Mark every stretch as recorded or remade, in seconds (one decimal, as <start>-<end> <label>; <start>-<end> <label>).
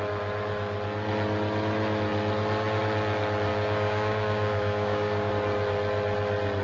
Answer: 0.0-3.5 recorded; 3.5-5.3 remade; 5.3-6.6 recorded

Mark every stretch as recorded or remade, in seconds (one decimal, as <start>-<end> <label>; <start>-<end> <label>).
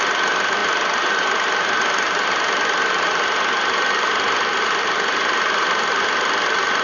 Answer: 0.0-6.8 recorded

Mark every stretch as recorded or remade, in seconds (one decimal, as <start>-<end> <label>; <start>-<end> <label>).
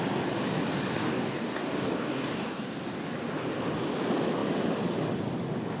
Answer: 0.0-1.0 recorded; 1.0-2.7 remade; 2.7-5.8 recorded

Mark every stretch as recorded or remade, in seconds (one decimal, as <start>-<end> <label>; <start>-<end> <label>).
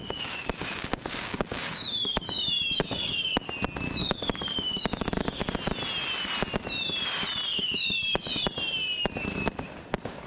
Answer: 0.0-3.5 remade; 3.5-4.0 recorded; 4.0-5.5 remade; 5.5-7.5 recorded; 7.5-8.4 remade; 8.4-10.3 recorded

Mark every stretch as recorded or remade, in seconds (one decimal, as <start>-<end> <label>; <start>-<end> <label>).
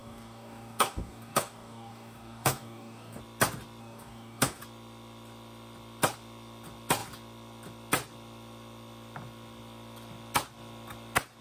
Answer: 0.0-3.2 remade; 3.2-3.8 recorded; 3.8-4.6 remade; 4.6-11.4 recorded